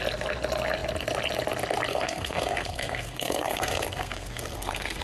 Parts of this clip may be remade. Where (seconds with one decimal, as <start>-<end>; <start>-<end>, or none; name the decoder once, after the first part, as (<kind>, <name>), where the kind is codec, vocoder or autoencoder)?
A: 1.9-5.0 (codec, SNAC)